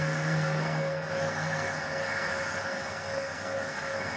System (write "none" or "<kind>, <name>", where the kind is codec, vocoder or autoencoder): codec, SNAC